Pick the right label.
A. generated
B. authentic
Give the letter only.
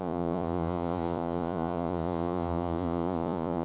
A